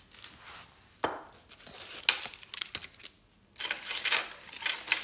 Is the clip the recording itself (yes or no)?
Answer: yes